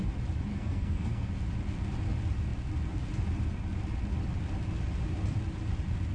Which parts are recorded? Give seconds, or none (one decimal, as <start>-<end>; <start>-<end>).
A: 0.0-0.5; 1.3-6.1